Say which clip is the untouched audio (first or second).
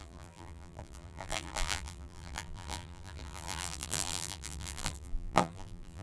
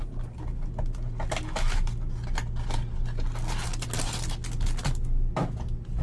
second